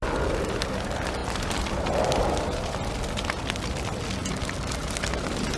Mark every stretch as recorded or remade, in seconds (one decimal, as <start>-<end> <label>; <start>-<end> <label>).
0.0-5.6 recorded